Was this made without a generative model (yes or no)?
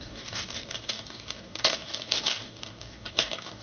no